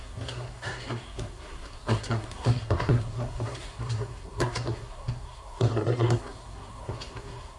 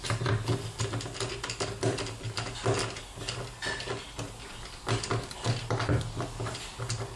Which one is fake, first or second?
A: first